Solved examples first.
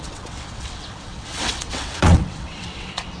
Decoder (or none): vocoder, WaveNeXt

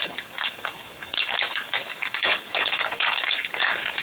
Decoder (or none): codec, DAC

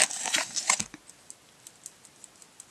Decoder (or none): none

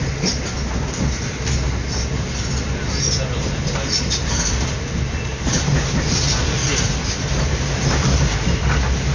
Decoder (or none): none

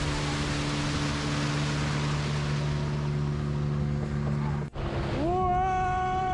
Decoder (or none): none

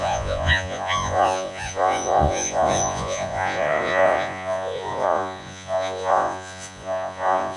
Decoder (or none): vocoder, Vocos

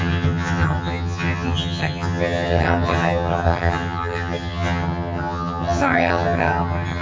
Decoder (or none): vocoder, HiFi-GAN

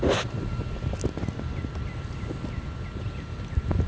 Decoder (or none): none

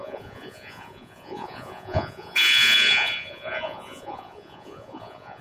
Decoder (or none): vocoder, Vocos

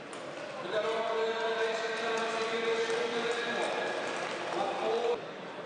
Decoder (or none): none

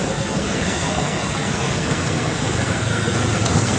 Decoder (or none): codec, SNAC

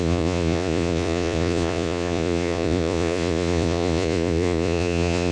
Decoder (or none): vocoder, Vocos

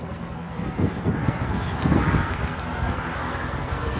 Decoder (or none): codec, SNAC